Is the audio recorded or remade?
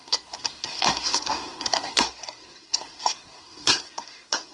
remade